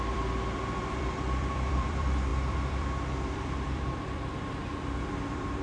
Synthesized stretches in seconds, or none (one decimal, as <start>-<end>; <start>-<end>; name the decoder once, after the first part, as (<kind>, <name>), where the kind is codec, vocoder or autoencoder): 0.0-5.6 (vocoder, BigVGAN v2)